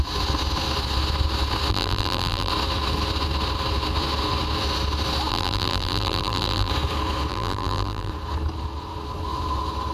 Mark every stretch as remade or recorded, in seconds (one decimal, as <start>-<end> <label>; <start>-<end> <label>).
0.0-1.7 recorded; 1.7-2.5 remade; 2.5-5.3 recorded; 5.3-6.7 remade; 6.7-7.3 recorded; 7.3-8.1 remade; 8.1-9.9 recorded